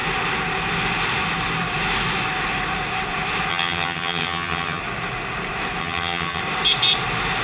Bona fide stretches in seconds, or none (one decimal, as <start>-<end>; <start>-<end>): 0.0-3.5; 4.8-5.8; 6.4-7.4